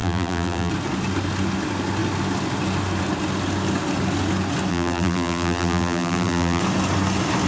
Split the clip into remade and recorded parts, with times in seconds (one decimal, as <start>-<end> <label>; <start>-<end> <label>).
0.0-0.7 remade; 0.7-4.7 recorded; 4.7-6.6 remade; 6.6-7.5 recorded